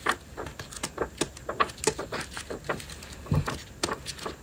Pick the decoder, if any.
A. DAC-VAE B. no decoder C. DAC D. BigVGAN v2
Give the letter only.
B